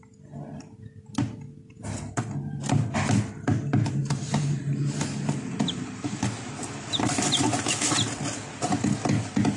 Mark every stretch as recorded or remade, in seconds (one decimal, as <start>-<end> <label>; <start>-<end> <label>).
0.0-4.0 recorded; 4.0-4.6 remade; 4.6-9.6 recorded